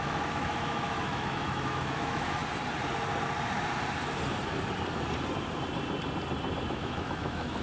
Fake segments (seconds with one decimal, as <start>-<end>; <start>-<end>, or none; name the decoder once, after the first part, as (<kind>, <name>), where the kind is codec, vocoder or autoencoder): 0.0-2.4 (autoencoder, DAC-VAE); 6.7-7.6